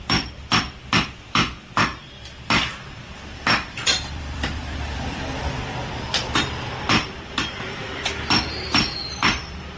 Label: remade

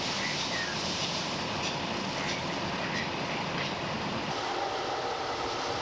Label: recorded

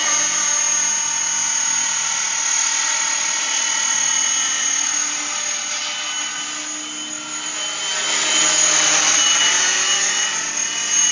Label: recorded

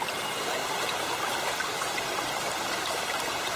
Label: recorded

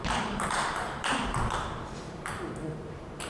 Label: remade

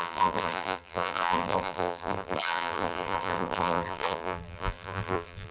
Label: remade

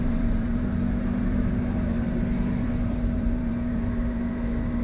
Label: remade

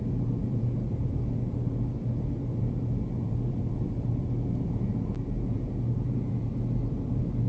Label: remade